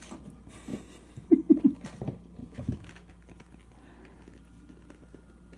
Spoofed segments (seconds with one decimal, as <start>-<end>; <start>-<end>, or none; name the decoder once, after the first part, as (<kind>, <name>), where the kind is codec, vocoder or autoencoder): 2.4-3.1 (autoencoder, DAC-VAE)